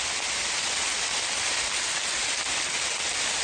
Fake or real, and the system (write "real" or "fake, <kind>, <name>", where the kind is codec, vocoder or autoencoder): real